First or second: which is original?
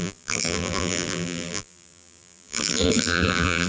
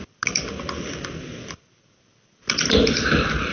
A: second